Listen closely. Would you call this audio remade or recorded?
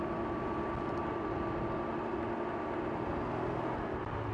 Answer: recorded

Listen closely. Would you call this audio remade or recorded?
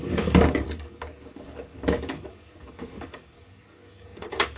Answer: remade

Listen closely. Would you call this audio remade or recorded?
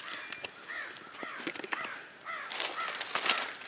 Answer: recorded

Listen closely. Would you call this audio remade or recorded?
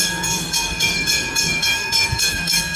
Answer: remade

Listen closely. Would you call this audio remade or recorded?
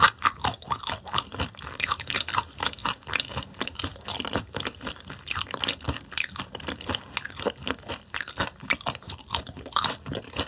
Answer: recorded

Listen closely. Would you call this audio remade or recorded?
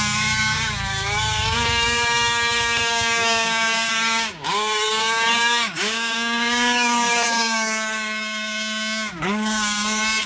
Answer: remade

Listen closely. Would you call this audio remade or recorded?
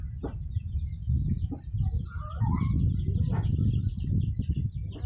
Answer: recorded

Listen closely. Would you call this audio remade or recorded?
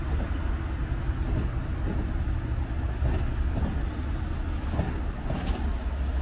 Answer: recorded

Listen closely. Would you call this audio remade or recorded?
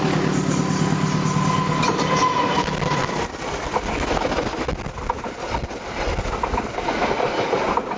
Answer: recorded